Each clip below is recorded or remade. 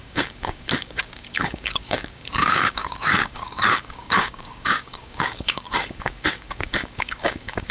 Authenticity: remade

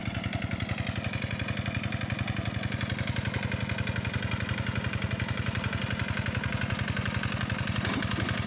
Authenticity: recorded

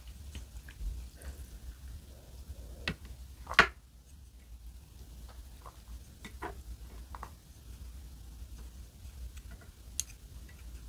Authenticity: recorded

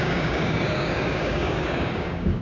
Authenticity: remade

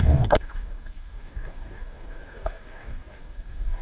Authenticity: remade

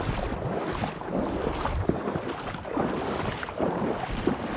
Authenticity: recorded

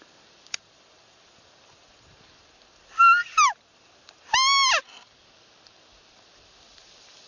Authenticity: recorded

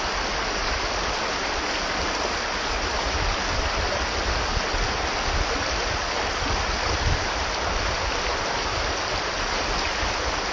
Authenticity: recorded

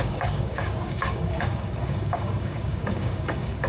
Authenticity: remade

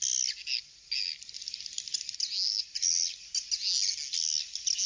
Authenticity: recorded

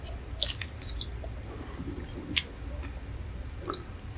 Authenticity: recorded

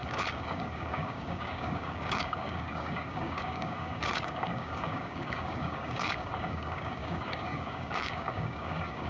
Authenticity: remade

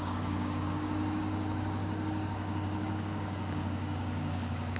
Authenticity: remade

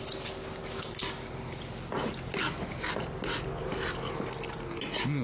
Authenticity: recorded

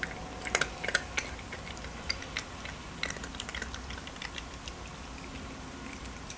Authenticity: recorded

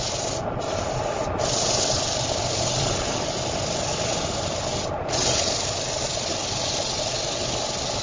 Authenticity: recorded